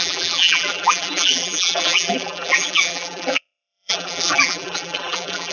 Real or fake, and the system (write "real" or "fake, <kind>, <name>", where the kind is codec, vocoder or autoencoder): fake, vocoder, BigVGAN v2